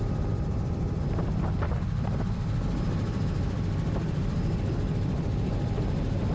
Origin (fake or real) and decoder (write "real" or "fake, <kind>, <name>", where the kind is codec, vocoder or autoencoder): fake, vocoder, BigVGAN v2